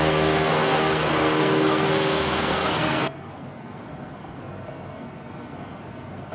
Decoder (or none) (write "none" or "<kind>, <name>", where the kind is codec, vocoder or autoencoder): codec, SNAC